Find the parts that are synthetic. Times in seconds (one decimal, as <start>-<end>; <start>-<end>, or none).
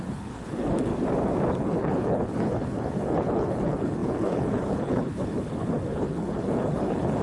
0.0-0.9; 1.6-7.2